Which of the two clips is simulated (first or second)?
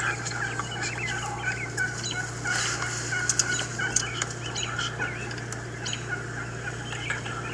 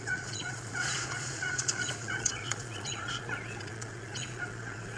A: second